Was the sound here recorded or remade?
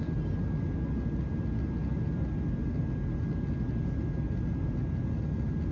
recorded